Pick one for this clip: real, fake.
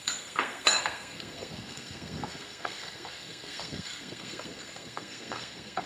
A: fake